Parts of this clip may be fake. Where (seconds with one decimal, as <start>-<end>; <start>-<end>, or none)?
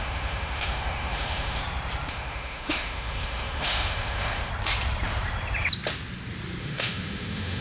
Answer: 0.0-1.6; 2.1-4.5; 6.6-7.6